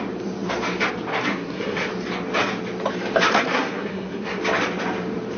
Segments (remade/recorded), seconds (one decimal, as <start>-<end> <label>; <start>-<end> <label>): 0.0-1.1 recorded; 1.1-1.9 remade; 1.9-3.3 recorded; 3.3-4.4 remade; 4.4-5.4 recorded